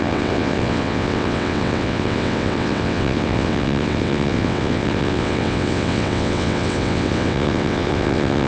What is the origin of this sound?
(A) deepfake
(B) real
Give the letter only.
A